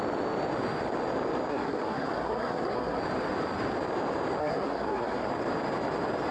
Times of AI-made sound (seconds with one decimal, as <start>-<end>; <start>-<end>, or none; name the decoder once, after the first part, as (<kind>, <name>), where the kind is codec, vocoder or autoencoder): 1.5-3.0 (codec, SNAC); 4.4-5.3